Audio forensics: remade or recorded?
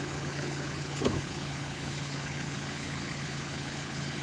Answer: remade